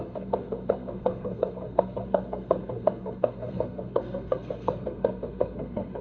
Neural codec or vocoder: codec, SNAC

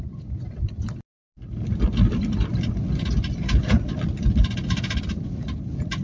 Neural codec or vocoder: none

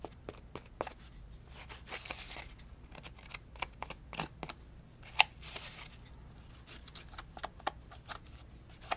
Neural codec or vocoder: none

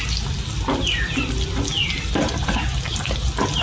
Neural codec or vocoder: none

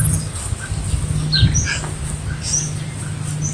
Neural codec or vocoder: none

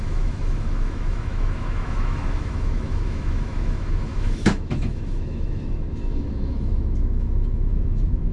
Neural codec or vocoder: autoencoder, DAC-VAE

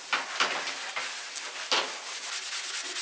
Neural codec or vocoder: none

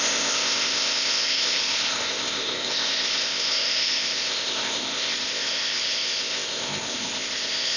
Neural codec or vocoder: codec, ZipCodec